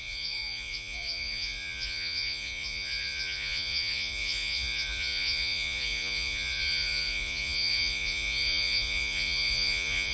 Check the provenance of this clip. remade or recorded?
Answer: remade